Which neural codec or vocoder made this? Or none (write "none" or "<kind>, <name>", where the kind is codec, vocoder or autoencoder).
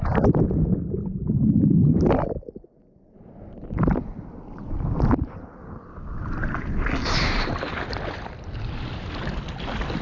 none